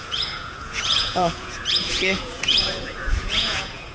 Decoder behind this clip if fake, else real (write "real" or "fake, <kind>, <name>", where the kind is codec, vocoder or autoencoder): fake, vocoder, Vocos